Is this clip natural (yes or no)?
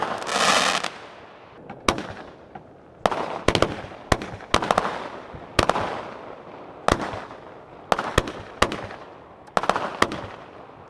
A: yes